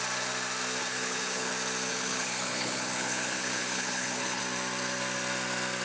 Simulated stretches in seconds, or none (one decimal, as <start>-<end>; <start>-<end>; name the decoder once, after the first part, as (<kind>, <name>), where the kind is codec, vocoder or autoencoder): 0.8-1.5 (codec, HILCodec); 1.9-4.4